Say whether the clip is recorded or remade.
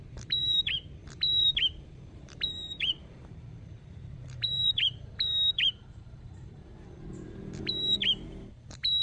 remade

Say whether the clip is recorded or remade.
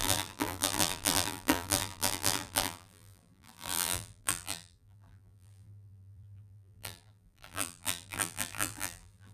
remade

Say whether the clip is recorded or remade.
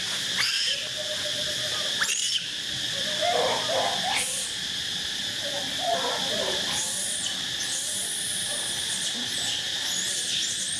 remade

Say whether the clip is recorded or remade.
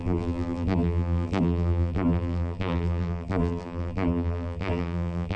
remade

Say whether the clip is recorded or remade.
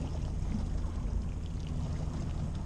recorded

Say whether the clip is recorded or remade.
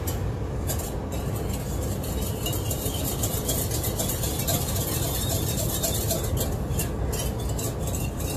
recorded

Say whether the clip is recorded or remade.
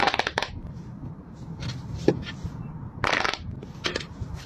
remade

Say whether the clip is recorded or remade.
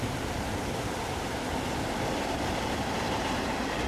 remade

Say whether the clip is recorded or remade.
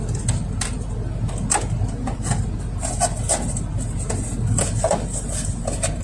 recorded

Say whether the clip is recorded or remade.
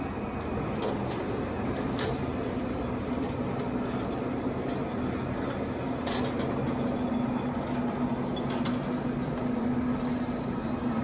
recorded